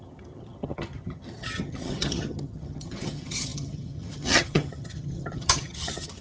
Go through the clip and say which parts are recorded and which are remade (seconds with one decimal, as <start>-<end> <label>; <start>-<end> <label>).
0.0-6.2 remade